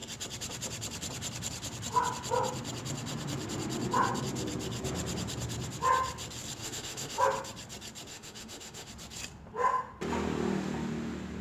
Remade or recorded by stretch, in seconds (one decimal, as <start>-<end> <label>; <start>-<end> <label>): 0.0-6.6 recorded; 6.6-7.2 remade; 7.2-8.1 recorded; 8.1-8.9 remade; 8.9-11.4 recorded